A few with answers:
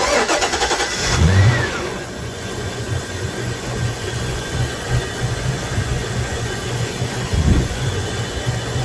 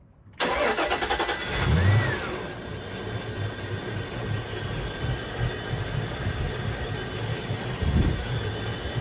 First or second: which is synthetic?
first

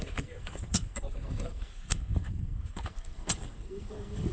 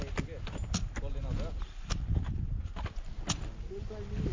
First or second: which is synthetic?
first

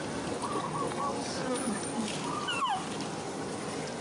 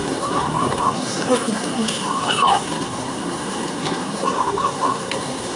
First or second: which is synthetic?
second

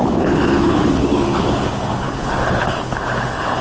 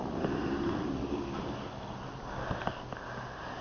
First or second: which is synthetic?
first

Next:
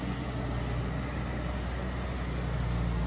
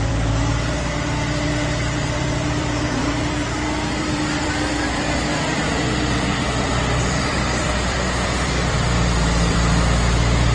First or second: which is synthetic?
second